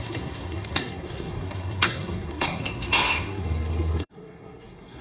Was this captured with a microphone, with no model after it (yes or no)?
no